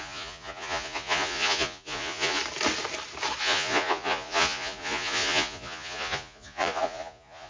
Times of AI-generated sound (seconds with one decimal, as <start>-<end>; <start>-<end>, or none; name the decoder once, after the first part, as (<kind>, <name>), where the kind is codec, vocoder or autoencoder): 0.0-2.4 (vocoder, Vocos); 3.4-7.5